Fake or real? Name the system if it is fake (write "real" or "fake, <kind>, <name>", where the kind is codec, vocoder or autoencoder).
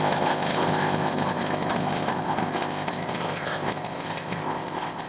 fake, codec, ZipCodec